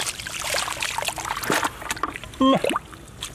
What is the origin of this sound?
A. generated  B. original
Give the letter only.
B